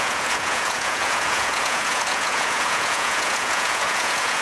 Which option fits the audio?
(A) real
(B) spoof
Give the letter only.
B